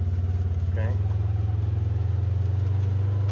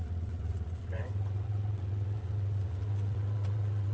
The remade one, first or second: second